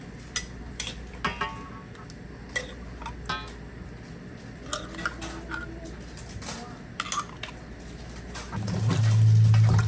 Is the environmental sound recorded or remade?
recorded